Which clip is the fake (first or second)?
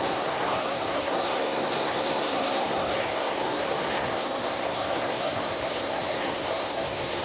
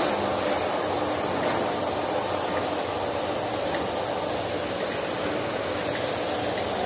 first